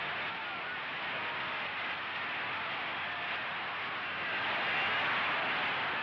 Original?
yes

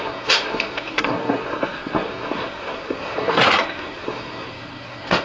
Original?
no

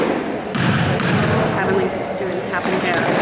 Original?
yes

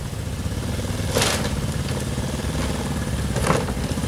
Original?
yes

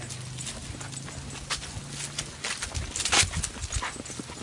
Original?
yes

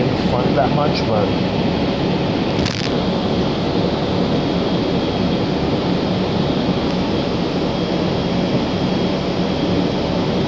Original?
yes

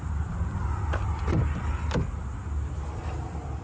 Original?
yes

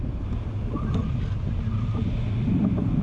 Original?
yes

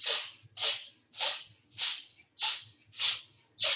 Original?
yes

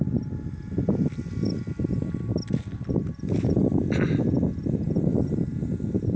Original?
yes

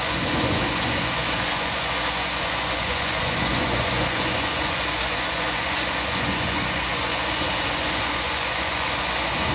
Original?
no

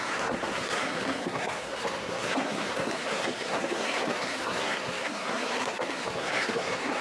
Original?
no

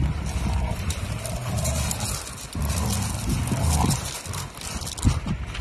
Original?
yes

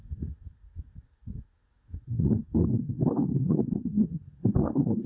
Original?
no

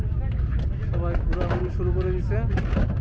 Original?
yes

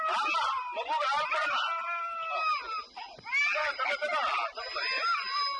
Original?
yes